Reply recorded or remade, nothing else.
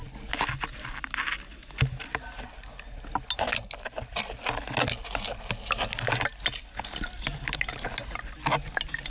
recorded